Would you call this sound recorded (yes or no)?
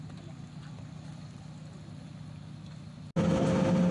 yes